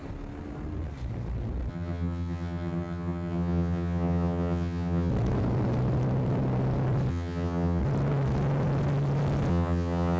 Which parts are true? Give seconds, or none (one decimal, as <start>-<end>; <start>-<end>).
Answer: 0.0-1.7; 5.1-7.1; 7.8-9.5